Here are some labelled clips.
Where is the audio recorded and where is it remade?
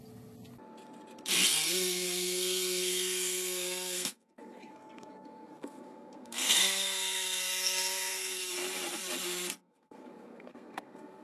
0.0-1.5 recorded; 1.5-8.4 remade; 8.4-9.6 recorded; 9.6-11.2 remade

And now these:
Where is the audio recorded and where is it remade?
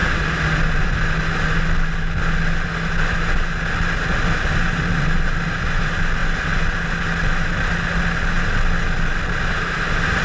0.0-10.2 recorded